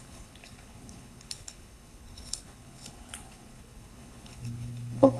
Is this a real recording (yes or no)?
no